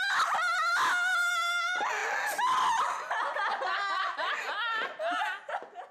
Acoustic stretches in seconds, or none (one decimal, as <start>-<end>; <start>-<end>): 0.0-5.9